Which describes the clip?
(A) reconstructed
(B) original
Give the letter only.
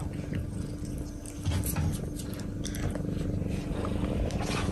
B